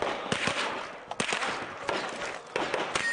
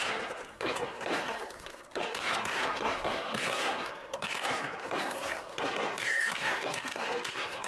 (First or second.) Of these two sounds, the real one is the first